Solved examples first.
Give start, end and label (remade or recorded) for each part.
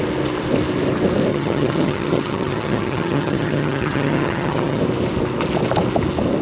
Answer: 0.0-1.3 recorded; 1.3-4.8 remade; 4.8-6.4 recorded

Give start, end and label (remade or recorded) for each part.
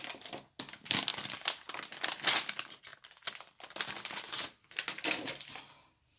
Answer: 0.0-6.2 recorded